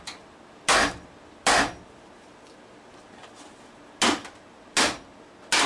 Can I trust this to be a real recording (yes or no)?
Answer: yes